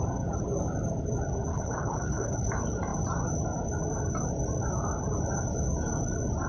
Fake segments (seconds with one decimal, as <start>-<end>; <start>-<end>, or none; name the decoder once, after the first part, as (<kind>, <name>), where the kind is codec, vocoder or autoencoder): 1.5-2.5 (codec, HILCodec)